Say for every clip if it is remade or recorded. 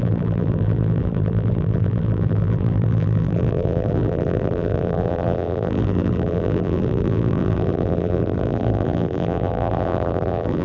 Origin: remade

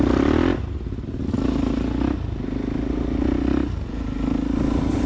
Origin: recorded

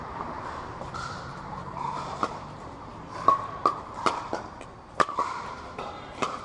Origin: remade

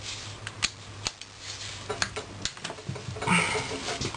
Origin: recorded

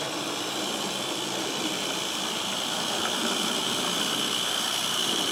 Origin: remade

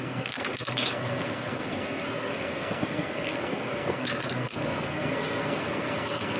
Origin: remade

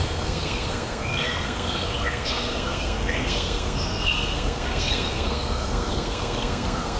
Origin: remade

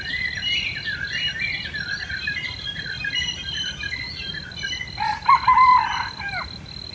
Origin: remade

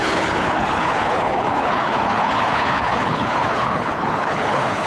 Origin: remade